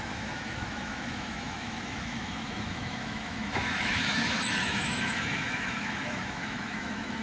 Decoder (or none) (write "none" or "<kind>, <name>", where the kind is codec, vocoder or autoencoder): autoencoder, DAC-VAE